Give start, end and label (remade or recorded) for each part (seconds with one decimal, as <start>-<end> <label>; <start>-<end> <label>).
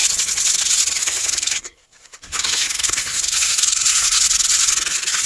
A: 0.0-1.0 recorded; 1.0-4.2 remade; 4.2-5.3 recorded